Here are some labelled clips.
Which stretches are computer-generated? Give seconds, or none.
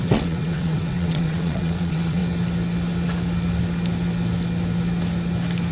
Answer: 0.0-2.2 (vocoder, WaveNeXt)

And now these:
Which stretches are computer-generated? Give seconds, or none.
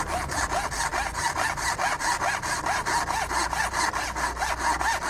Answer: none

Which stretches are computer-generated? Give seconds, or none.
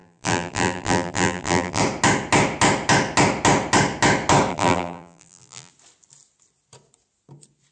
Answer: 0.0-1.8 (vocoder, BigVGAN v2); 4.5-5.7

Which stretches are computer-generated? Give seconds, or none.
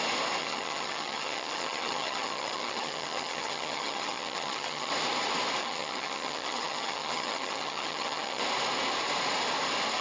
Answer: 0.4-4.9 (vocoder, HiFi-GAN); 5.6-8.4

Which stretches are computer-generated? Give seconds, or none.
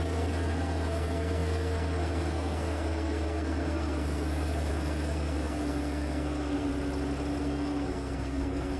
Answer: 0.0-6.7 (codec, SNAC); 7.4-8.8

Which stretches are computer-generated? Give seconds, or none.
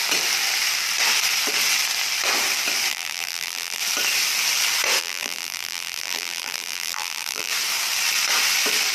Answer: 2.9-3.8 (vocoder, BigVGAN v2); 5.0-7.5